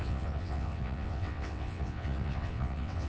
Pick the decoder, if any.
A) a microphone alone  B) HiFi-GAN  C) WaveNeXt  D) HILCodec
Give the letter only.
C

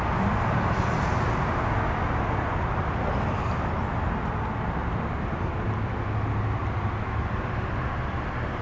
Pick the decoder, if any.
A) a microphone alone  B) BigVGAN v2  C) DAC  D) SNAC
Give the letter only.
A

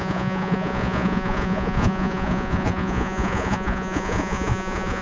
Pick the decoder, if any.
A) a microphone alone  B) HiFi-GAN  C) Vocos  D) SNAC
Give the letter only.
C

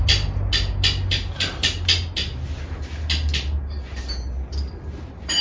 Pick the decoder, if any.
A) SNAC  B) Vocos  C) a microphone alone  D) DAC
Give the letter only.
C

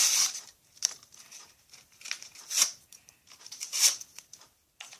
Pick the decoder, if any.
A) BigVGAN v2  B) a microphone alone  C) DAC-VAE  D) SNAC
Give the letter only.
A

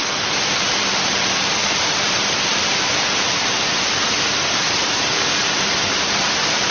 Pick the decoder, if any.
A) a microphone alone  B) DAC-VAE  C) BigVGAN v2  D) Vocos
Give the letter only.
C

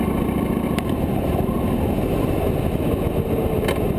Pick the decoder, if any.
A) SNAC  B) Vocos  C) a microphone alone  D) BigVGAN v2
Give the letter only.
C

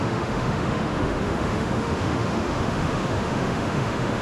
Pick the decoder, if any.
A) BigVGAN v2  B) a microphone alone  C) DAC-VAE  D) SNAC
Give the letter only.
C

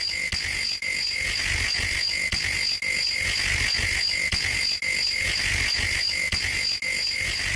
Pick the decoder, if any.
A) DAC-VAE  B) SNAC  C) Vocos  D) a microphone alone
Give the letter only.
D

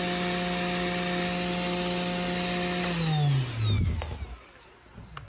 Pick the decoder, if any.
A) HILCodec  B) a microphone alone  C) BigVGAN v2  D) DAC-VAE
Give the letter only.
B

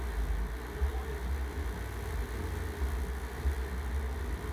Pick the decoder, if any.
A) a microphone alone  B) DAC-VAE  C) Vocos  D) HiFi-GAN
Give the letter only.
A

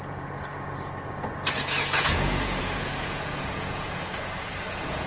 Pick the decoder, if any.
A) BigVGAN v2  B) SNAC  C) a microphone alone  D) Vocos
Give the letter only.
D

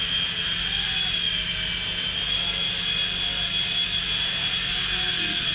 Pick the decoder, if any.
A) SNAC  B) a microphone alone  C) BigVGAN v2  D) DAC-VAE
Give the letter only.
B